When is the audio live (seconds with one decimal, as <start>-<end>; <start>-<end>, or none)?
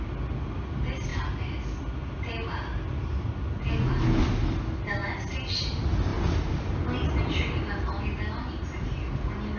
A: 0.0-9.6